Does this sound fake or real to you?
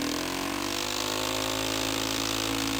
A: real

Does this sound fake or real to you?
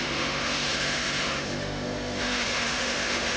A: fake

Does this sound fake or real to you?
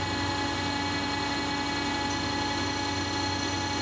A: real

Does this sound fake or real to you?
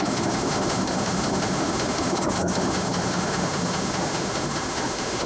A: fake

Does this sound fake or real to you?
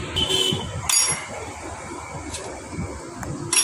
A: real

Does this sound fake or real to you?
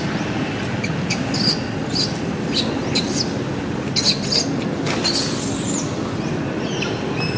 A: real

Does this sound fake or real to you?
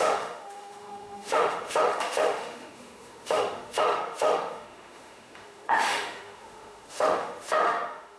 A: fake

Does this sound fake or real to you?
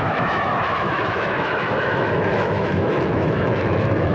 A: fake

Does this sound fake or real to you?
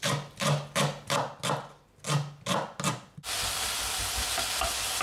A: real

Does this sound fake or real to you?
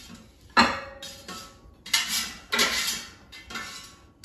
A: real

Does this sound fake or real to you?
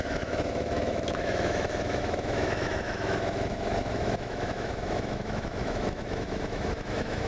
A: fake